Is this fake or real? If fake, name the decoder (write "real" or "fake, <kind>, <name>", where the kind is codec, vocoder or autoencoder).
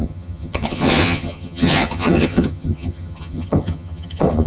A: fake, vocoder, HiFi-GAN